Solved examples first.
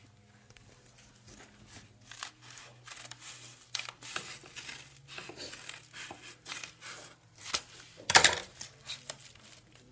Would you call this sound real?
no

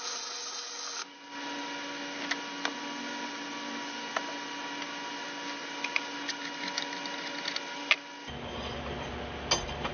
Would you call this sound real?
yes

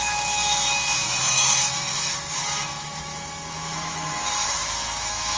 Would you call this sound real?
no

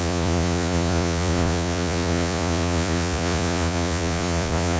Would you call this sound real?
no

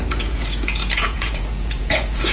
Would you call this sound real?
no